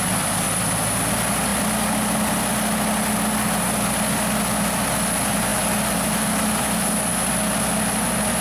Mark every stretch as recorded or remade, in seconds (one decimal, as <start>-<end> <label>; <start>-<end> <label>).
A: 0.0-8.4 recorded